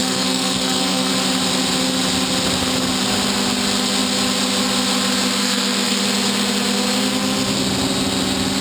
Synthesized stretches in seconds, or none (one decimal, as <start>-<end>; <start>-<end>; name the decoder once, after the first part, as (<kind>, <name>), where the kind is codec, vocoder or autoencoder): 0.0-1.1 (codec, SNAC); 5.4-6.0